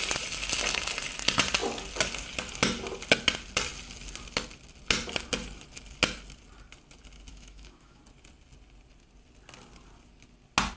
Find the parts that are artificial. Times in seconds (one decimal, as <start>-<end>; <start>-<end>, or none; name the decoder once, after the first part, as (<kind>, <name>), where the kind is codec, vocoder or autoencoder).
7.3-8.0 (autoencoder, DAC-VAE)